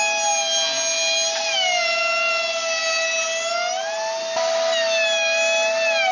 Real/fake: real